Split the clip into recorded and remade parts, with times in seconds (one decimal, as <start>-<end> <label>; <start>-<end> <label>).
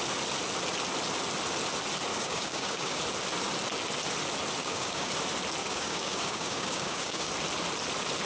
0.0-2.1 recorded; 2.1-3.0 remade; 3.0-4.6 recorded; 4.6-5.1 remade; 5.1-5.6 recorded; 5.6-7.3 remade; 7.3-8.3 recorded